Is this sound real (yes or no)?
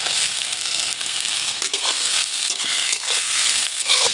no